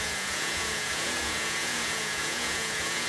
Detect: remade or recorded remade